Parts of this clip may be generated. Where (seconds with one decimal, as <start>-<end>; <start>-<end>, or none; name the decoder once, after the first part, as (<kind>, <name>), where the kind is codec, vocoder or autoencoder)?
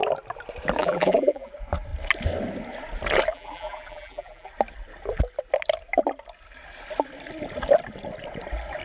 0.8-1.5 (vocoder, BigVGAN v2); 3.3-4.5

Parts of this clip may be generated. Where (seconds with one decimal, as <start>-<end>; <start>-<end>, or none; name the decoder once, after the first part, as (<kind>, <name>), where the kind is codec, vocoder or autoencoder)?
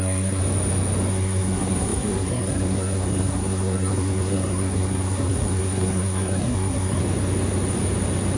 0.0-0.4 (codec, SNAC); 1.1-7.0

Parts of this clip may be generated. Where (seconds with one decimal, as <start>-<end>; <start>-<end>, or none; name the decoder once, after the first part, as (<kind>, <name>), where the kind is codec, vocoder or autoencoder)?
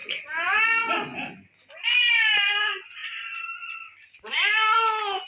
none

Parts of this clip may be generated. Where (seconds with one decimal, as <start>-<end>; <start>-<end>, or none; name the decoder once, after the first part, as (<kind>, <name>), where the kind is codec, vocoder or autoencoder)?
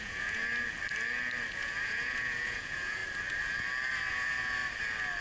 0.0-0.4 (vocoder, Vocos); 1.5-3.0; 4.1-4.6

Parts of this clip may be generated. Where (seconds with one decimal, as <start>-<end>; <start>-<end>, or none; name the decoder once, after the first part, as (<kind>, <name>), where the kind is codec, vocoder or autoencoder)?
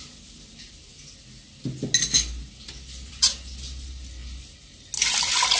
none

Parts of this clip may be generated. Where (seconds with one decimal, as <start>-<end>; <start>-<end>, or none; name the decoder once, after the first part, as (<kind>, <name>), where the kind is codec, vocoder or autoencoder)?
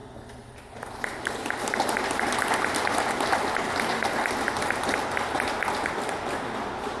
none